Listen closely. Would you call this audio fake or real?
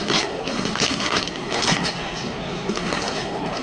fake